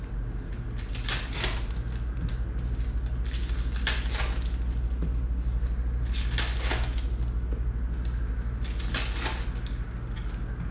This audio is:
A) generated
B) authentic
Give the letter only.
B